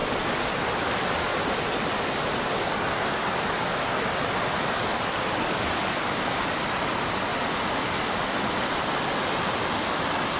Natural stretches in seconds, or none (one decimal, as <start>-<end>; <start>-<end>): 0.0-10.4